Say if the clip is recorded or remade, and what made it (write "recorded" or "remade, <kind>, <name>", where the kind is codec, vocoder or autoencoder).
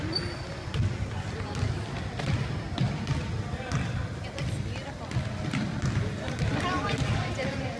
recorded